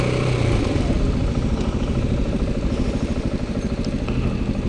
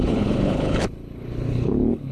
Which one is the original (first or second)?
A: first